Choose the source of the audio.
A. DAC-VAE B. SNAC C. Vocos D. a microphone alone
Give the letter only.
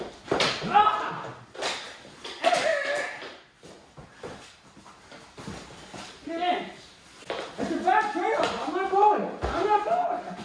D